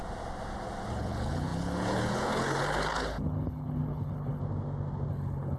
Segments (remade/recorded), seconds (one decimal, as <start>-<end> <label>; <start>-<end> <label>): 0.0-0.9 recorded; 0.9-4.4 remade; 4.4-5.1 recorded; 5.1-5.6 remade